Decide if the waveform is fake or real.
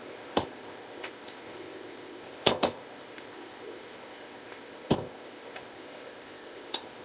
fake